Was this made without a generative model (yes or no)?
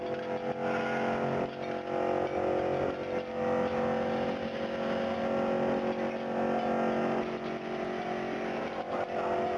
yes